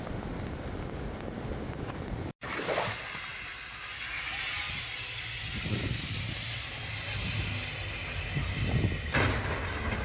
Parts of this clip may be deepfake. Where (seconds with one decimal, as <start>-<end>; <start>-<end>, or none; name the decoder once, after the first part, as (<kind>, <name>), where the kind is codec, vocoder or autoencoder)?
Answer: none